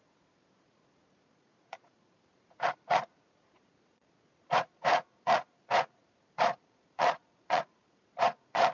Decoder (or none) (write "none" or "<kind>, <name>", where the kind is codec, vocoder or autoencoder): vocoder, Vocos